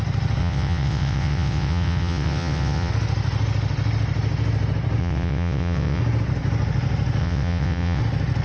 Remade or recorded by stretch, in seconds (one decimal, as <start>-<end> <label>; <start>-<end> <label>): 0.0-0.4 recorded; 0.4-2.9 remade; 2.9-5.0 recorded; 5.0-6.0 remade; 6.0-7.2 recorded; 7.2-8.0 remade; 8.0-8.4 recorded